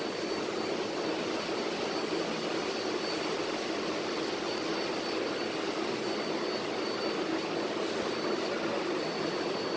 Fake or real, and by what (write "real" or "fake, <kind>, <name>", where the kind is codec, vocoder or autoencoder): real